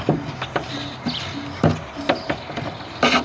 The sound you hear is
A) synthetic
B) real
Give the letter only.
B